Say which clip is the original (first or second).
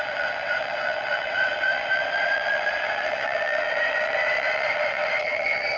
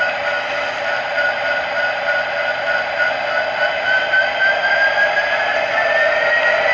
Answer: second